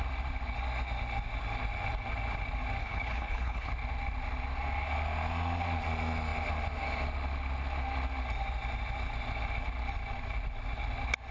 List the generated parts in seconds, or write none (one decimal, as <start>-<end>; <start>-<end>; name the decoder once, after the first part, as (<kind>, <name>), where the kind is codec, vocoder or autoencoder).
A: 2.8-3.7 (codec, HILCodec)